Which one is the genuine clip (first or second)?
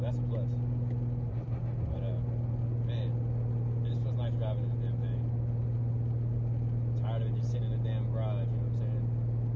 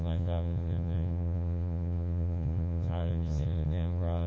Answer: first